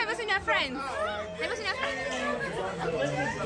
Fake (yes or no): no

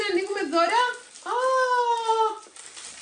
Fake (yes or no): no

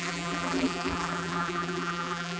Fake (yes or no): yes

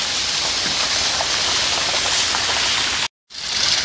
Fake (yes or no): no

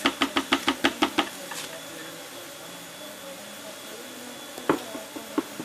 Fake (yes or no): no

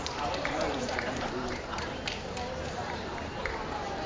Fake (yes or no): yes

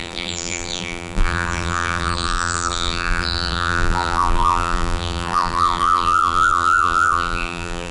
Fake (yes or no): yes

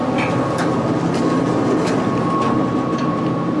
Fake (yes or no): no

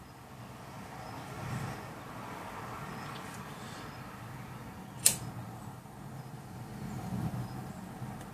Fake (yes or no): no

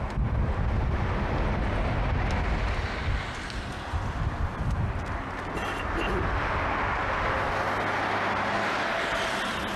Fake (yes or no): no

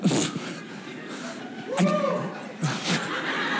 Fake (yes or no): no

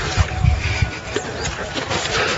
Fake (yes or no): yes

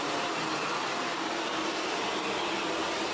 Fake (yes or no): yes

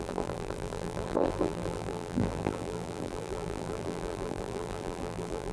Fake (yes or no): yes